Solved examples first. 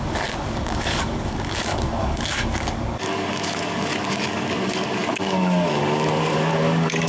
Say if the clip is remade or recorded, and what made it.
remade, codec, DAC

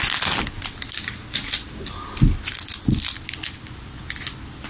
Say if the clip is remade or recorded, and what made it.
recorded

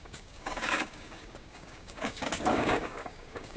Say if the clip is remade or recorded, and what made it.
remade, codec, DAC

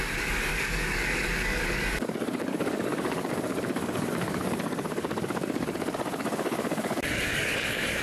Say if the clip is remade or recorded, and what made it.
remade, codec, DAC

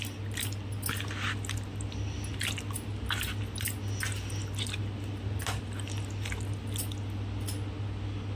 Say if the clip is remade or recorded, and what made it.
recorded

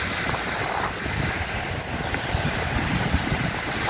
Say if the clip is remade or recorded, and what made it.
recorded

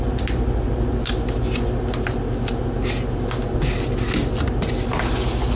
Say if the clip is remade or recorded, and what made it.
recorded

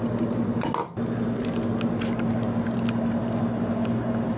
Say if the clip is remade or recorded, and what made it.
recorded